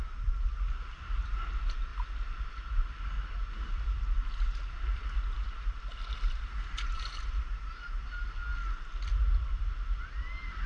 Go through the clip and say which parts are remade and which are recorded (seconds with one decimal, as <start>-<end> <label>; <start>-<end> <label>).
0.0-10.7 recorded